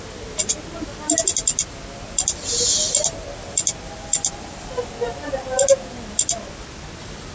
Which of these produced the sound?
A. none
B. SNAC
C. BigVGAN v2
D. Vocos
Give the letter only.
A